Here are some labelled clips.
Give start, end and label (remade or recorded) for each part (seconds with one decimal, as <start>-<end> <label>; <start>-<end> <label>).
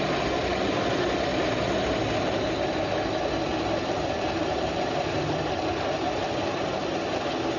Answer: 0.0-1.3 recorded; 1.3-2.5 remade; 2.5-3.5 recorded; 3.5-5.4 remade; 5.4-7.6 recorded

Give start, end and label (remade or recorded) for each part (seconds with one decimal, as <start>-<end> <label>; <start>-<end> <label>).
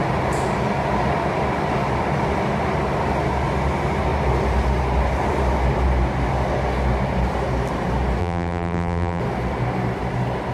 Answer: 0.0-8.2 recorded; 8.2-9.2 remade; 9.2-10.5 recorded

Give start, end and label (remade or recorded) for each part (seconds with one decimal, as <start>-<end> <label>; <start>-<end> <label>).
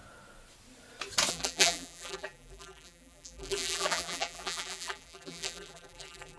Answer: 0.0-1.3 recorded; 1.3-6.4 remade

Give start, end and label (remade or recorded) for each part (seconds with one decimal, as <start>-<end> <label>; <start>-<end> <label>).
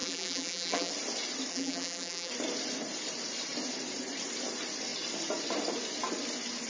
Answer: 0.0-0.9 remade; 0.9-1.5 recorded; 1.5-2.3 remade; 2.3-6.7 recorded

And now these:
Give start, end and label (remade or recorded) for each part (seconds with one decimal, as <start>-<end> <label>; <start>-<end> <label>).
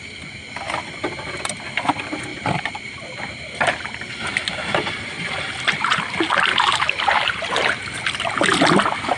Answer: 0.0-2.3 recorded; 2.3-6.0 remade; 6.0-6.5 recorded; 6.5-7.8 remade; 7.8-9.2 recorded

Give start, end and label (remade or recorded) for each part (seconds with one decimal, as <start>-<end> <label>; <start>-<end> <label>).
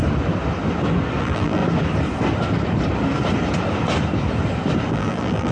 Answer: 0.0-1.2 recorded; 1.2-1.6 remade; 1.6-4.9 recorded; 4.9-5.5 remade